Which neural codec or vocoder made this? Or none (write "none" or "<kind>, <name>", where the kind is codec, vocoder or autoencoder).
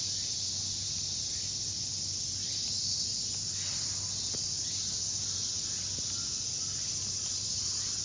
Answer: none